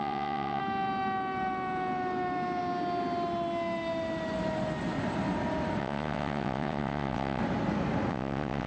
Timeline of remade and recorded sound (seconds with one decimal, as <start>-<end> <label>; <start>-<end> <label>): 0.0-0.6 remade; 0.6-5.8 recorded; 5.8-7.4 remade; 7.4-8.1 recorded; 8.1-8.7 remade